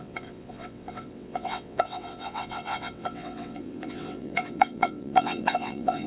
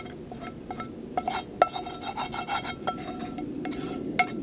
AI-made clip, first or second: first